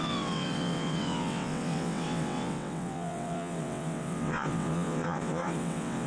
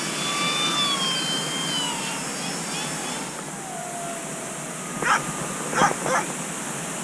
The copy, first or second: first